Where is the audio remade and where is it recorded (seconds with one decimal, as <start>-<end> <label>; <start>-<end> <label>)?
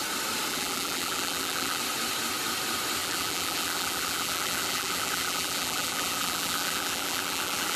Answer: 0.0-0.5 recorded; 0.5-1.8 remade; 1.8-3.0 recorded; 3.0-7.8 remade